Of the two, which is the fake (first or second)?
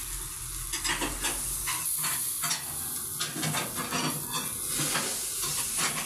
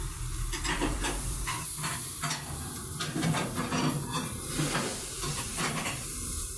second